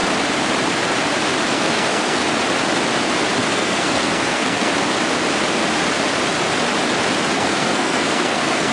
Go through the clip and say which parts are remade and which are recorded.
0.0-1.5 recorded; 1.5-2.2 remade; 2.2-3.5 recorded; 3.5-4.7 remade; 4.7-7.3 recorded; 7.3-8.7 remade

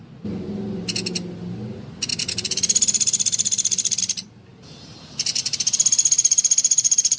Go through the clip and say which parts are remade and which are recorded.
0.0-4.5 recorded; 4.5-7.2 remade

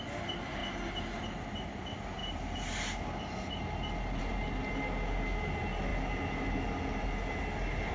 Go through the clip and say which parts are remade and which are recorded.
0.0-7.9 recorded